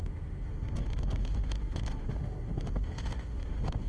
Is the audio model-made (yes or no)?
yes